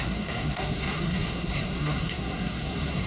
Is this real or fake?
fake